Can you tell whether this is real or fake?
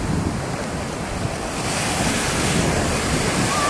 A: real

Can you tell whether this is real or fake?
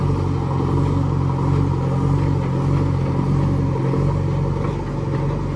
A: real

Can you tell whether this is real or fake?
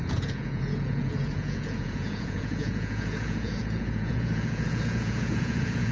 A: fake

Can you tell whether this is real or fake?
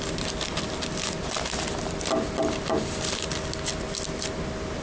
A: real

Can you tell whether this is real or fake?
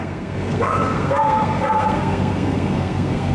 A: fake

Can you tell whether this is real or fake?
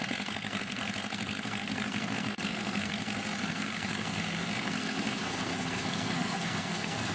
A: fake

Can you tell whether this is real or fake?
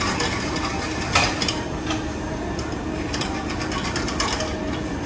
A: real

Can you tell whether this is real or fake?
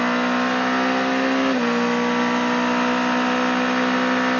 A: real